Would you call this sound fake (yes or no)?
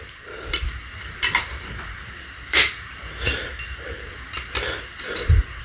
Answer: yes